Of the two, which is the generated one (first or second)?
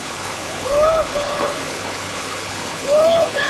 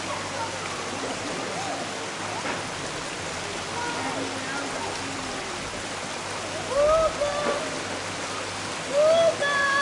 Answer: first